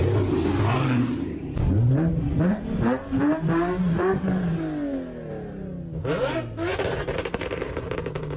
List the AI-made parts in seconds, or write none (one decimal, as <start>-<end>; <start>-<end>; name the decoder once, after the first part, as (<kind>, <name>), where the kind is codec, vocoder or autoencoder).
0.7-4.5 (vocoder, BigVGAN v2); 6.7-8.0